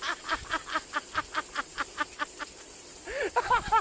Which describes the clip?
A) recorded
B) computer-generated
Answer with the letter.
A